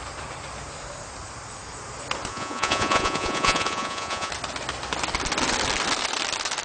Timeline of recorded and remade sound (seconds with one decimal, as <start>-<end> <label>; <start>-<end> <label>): 0.0-2.3 recorded; 2.3-4.3 remade; 4.3-6.6 recorded